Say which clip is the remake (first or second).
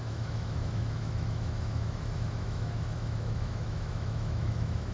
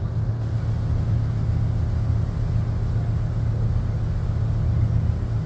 first